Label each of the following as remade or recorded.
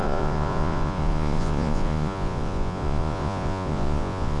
remade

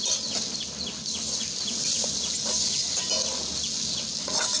recorded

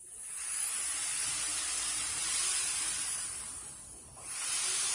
recorded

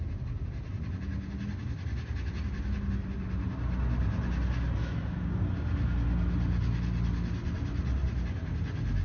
recorded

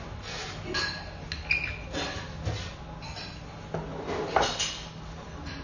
recorded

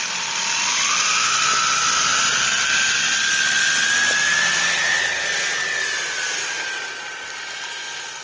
recorded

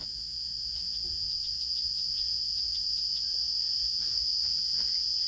remade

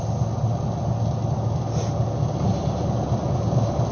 recorded